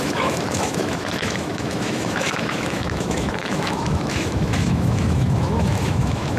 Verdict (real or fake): fake